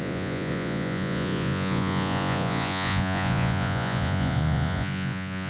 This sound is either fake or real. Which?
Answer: fake